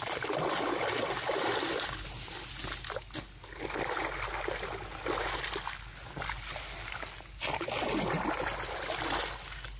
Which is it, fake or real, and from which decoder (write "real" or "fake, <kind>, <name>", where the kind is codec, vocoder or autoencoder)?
real